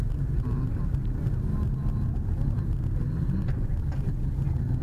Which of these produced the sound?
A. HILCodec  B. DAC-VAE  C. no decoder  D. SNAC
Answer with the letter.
C